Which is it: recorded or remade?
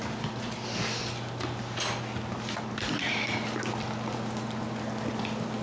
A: recorded